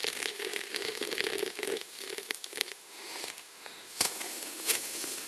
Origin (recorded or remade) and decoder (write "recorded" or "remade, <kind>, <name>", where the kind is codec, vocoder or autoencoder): remade, autoencoder, DAC-VAE